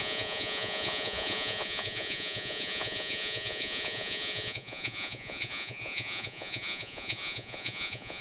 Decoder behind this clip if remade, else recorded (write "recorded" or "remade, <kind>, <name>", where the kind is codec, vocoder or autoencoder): remade, vocoder, Vocos